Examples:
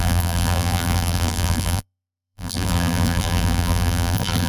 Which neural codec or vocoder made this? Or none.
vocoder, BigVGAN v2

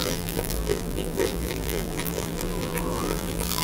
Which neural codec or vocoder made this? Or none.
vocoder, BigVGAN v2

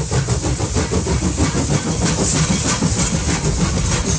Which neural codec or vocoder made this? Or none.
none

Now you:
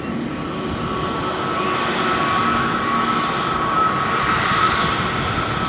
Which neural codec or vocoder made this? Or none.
none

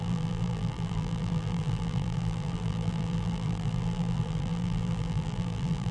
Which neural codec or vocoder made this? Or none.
vocoder, BigVGAN v2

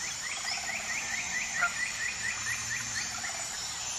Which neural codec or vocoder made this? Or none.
vocoder, BigVGAN v2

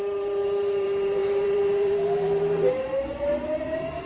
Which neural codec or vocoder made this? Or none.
vocoder, BigVGAN v2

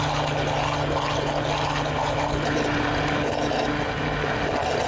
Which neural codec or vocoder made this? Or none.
none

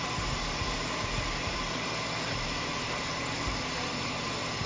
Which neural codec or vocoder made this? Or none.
vocoder, BigVGAN v2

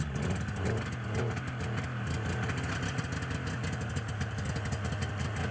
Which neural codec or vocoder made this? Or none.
none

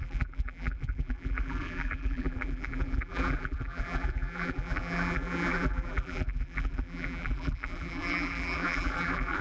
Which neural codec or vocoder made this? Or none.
vocoder, BigVGAN v2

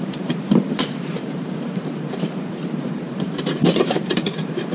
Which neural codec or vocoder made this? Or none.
vocoder, BigVGAN v2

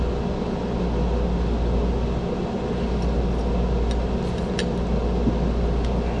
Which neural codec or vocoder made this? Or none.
none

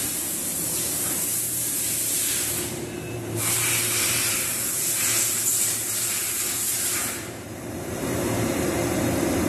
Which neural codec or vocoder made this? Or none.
vocoder, BigVGAN v2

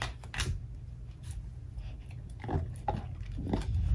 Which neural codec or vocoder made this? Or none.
none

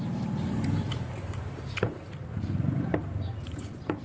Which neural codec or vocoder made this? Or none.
vocoder, BigVGAN v2